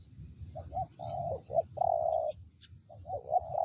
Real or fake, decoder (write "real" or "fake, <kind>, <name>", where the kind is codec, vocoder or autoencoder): real